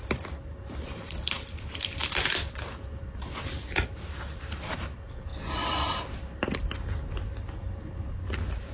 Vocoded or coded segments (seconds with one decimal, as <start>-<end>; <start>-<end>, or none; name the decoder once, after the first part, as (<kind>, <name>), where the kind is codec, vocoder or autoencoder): 0.0-2.0 (vocoder, BigVGAN v2); 3.0-5.3